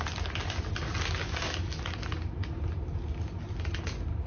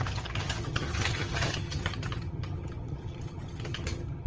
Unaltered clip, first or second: first